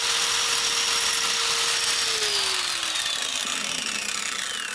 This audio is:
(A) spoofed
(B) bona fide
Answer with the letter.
B